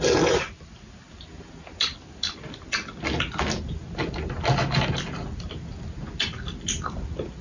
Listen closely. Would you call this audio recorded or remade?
recorded